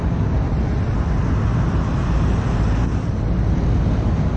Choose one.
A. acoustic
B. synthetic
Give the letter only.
A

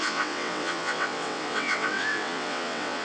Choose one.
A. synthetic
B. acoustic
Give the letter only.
A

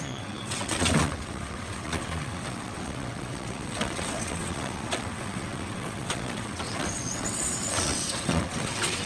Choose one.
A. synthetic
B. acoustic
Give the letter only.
A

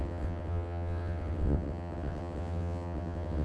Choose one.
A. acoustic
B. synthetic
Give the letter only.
B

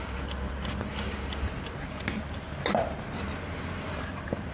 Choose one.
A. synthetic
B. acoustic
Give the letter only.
B